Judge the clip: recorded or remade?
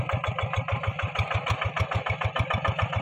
recorded